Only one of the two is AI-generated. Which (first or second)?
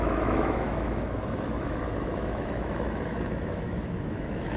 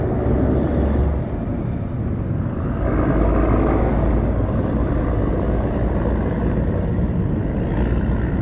first